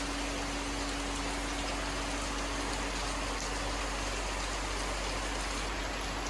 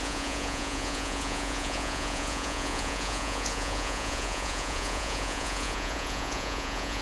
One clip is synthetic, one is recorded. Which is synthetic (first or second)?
second